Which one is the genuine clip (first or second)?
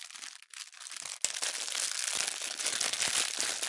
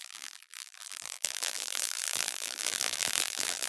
first